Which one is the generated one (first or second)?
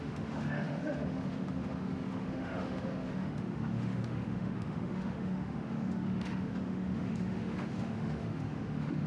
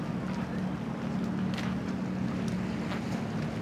first